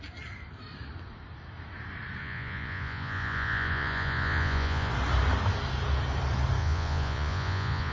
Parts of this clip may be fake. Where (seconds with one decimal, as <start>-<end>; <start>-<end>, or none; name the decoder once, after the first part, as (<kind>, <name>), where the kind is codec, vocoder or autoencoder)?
2.2-4.9 (vocoder, Vocos); 6.6-7.9